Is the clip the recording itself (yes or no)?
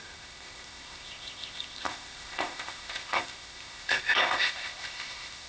no